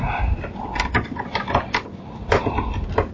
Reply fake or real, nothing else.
real